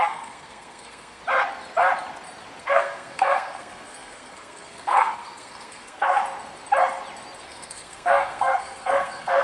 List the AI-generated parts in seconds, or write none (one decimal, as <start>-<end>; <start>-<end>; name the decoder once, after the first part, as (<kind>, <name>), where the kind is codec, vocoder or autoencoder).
0.0-1.2 (codec, SNAC); 2.6-6.2; 7.4-9.4